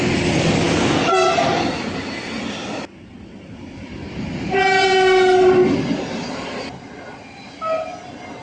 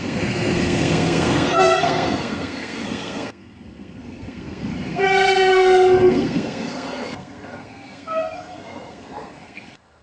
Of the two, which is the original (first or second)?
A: first